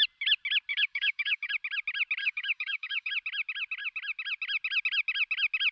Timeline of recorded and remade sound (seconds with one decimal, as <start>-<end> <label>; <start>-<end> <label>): 0.0-0.7 recorded; 0.7-1.5 remade; 1.5-2.2 recorded; 2.2-3.1 remade; 3.1-5.7 recorded